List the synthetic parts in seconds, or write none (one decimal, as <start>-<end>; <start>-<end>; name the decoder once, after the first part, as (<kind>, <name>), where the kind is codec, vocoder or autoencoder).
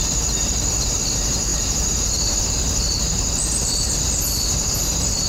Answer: 0.0-5.3 (vocoder, BigVGAN v2)